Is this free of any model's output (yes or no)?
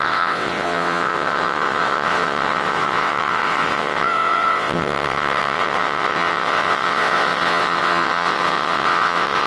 no